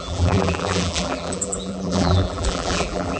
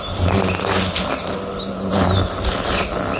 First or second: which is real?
second